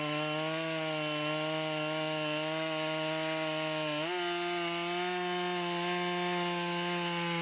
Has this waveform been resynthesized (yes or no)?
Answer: no